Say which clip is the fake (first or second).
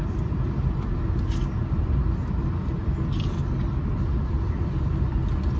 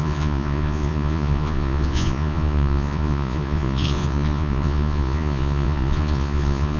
second